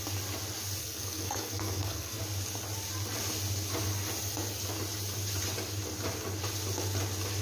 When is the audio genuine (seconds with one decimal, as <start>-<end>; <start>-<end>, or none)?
0.0-0.8; 2.2-7.4